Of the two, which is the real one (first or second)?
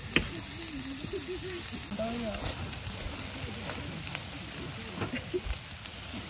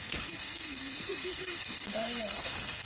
first